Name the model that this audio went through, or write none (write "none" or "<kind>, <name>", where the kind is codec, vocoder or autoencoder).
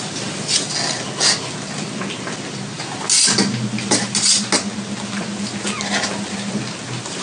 none